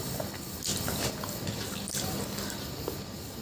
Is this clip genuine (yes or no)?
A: yes